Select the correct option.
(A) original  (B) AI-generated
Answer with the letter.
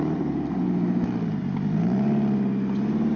A